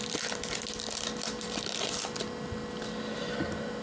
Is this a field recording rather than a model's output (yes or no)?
yes